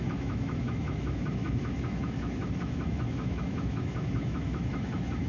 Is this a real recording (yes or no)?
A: no